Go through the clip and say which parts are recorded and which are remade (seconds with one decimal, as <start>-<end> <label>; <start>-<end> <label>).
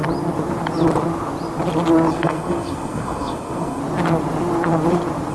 0.0-2.1 recorded; 2.1-3.8 remade; 3.8-5.3 recorded